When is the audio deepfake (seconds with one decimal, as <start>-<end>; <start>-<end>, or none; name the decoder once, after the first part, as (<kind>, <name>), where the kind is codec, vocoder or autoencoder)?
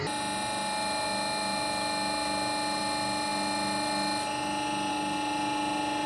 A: none